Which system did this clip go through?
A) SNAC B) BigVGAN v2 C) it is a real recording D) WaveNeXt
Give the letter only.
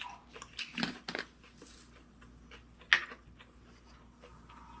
C